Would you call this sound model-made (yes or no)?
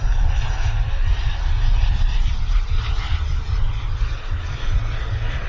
no